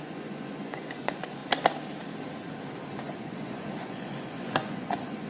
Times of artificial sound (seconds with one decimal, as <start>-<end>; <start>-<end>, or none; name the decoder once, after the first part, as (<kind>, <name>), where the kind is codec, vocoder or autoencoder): 0.0-1.4 (vocoder, Vocos); 2.9-5.3